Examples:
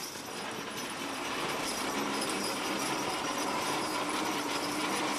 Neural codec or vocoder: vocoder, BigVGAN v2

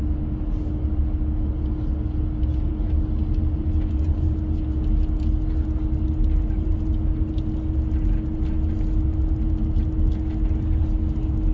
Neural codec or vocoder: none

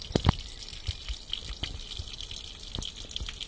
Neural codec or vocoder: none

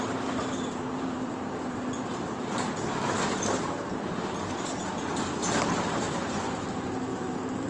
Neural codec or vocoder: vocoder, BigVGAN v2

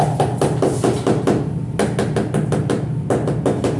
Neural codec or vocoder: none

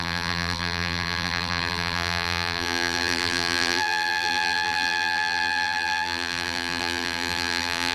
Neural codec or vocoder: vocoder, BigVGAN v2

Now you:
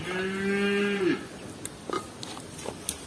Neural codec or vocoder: none